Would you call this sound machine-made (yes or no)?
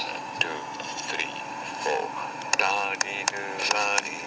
no